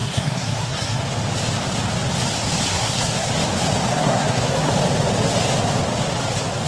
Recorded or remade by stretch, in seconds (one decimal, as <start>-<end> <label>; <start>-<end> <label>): 0.0-1.0 remade; 1.0-2.7 recorded; 2.7-3.3 remade; 3.3-3.9 recorded; 3.9-4.7 remade; 4.7-6.7 recorded